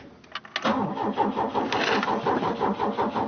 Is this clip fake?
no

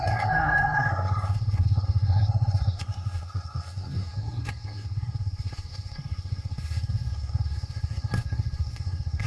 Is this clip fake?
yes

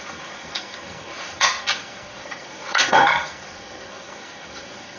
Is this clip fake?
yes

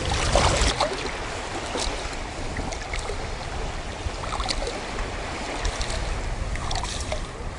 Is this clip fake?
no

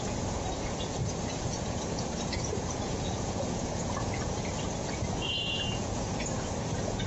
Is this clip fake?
yes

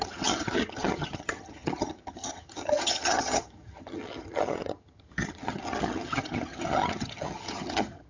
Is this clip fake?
yes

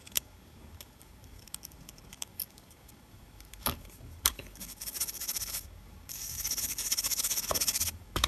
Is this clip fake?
yes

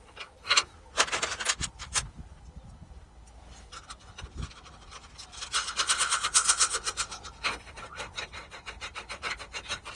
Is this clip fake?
no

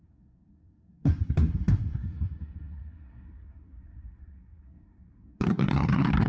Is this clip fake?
yes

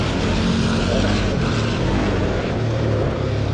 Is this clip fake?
no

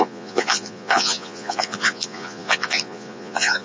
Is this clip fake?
yes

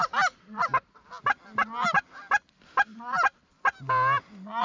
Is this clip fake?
no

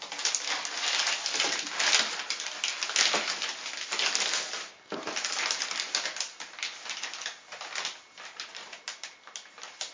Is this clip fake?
no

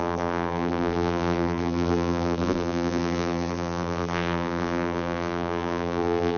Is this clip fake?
yes